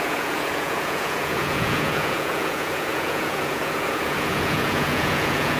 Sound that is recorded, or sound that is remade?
remade